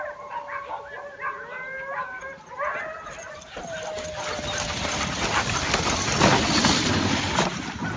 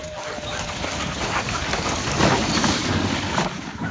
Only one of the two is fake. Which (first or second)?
second